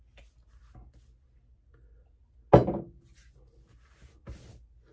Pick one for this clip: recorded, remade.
recorded